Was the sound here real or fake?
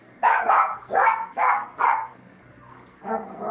fake